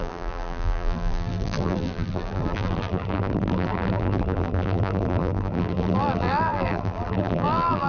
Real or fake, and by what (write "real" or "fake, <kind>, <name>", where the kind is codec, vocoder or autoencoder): fake, vocoder, BigVGAN v2